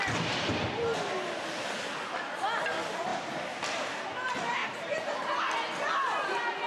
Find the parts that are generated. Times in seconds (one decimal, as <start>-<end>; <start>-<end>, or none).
3.1-4.0; 4.6-5.4